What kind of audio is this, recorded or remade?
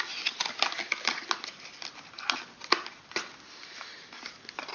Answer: recorded